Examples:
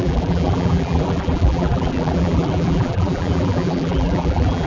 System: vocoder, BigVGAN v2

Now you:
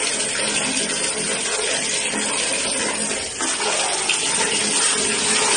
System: none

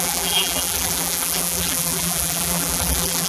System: vocoder, BigVGAN v2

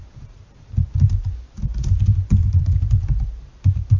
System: vocoder, BigVGAN v2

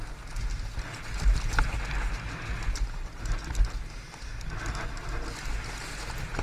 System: none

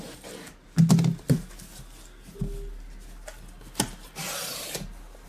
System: none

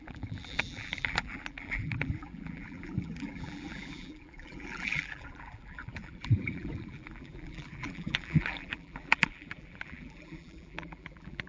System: vocoder, BigVGAN v2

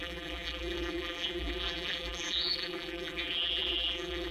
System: vocoder, BigVGAN v2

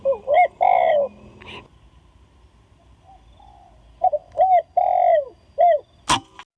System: none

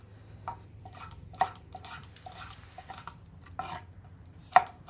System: vocoder, BigVGAN v2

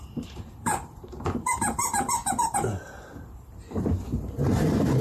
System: vocoder, BigVGAN v2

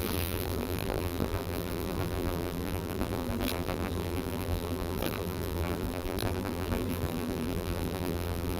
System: vocoder, BigVGAN v2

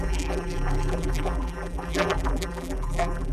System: vocoder, BigVGAN v2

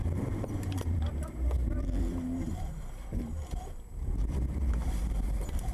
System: vocoder, BigVGAN v2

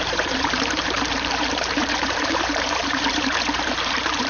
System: vocoder, BigVGAN v2